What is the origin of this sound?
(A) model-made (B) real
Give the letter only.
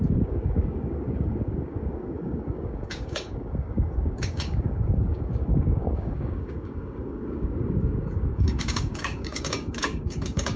A